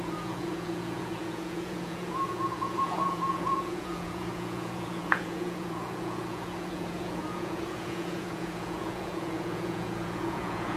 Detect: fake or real fake